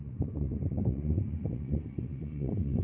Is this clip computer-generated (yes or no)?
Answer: yes